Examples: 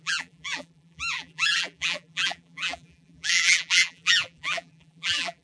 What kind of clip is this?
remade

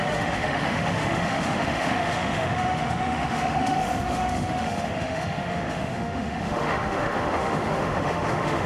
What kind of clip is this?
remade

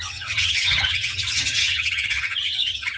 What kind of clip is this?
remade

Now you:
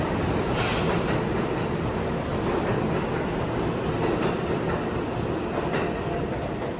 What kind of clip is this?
recorded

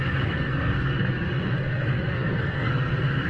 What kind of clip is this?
remade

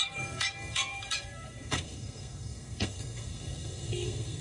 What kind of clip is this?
remade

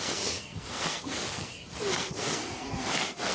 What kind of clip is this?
remade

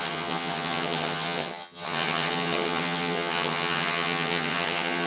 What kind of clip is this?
remade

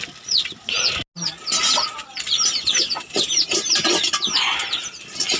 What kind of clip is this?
recorded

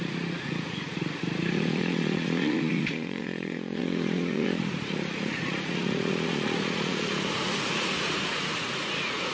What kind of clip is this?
remade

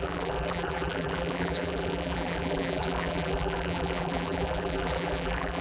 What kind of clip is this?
remade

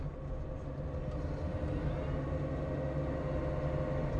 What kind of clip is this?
recorded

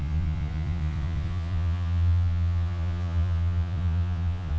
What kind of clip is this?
remade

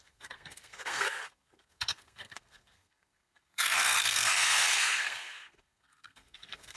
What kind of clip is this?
remade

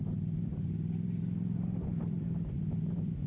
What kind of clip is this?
remade